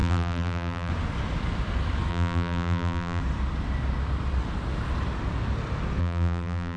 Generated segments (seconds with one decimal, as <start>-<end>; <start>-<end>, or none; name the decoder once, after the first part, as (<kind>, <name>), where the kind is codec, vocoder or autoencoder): 0.0-0.9 (vocoder, BigVGAN v2); 2.1-3.2; 6.0-6.8